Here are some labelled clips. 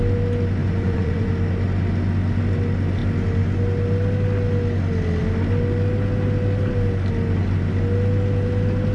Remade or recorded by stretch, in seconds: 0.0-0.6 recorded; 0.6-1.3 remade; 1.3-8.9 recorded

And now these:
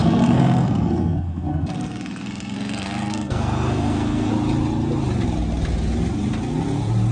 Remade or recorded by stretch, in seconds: 0.0-4.3 remade; 4.3-7.1 recorded

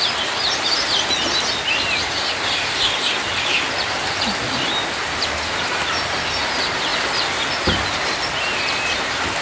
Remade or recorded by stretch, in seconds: 0.0-9.4 recorded

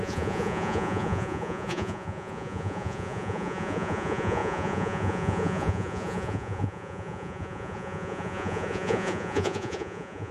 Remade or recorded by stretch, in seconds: 0.0-10.3 remade

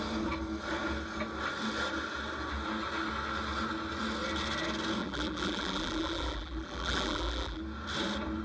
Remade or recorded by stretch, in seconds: 0.0-5.0 recorded; 5.0-7.6 remade; 7.6-8.4 recorded

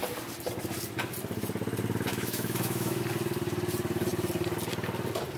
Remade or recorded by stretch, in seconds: 0.0-2.1 recorded; 2.1-3.0 remade; 3.0-5.4 recorded

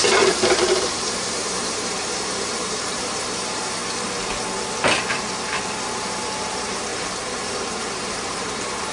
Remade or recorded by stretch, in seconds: 0.0-3.8 remade; 3.8-5.1 recorded; 5.1-8.9 remade